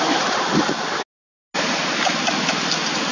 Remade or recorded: recorded